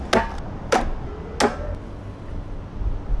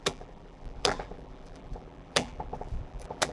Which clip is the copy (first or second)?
second